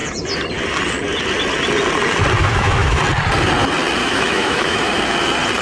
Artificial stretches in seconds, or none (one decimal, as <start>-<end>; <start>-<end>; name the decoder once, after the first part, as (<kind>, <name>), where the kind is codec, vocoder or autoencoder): 2.4-3.0 (autoencoder, DAC-VAE); 4.0-4.9